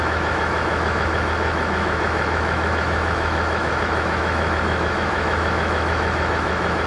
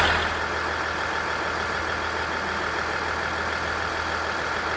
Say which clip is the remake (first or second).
first